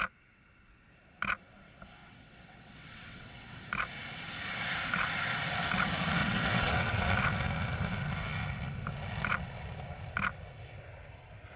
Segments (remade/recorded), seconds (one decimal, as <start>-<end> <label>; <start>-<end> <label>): 0.0-2.0 recorded; 2.0-3.6 remade; 3.6-6.2 recorded; 6.2-7.0 remade; 7.0-11.6 recorded